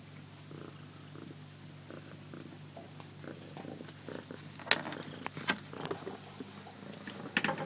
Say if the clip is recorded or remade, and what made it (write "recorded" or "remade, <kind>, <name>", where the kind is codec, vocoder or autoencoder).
recorded